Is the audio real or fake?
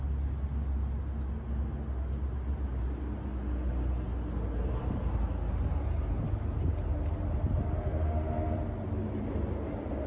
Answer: real